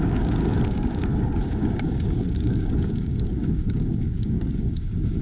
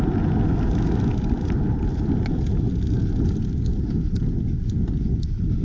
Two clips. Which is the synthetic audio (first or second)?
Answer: first